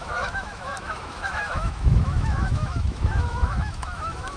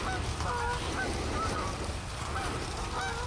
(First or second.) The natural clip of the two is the second